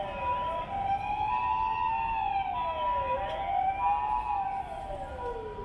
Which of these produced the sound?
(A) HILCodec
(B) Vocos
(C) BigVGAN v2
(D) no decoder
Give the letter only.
D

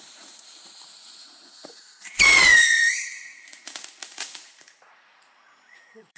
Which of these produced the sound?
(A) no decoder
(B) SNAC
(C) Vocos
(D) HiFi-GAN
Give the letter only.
C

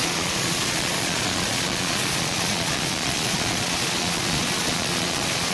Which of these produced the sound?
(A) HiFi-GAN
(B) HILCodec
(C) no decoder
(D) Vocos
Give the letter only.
D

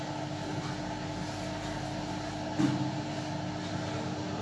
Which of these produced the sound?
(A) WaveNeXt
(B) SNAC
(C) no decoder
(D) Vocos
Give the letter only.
C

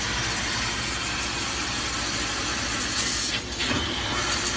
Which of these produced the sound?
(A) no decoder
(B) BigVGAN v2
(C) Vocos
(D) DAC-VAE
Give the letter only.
A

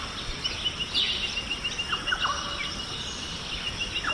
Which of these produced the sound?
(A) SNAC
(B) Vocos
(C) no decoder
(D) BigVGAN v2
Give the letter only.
C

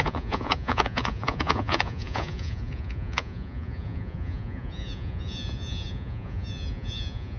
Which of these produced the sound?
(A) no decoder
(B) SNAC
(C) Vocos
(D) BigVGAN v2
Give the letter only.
C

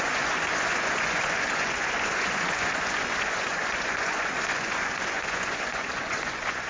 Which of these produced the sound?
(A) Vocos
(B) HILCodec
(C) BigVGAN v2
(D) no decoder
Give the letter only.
A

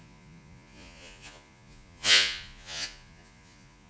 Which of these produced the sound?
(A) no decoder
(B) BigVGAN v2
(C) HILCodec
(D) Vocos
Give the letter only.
D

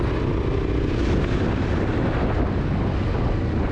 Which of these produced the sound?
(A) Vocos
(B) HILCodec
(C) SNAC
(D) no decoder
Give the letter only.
D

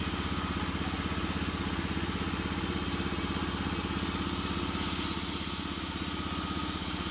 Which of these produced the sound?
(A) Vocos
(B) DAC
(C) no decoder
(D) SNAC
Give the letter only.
C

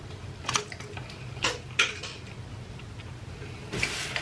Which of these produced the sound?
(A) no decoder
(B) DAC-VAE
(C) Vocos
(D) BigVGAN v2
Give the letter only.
A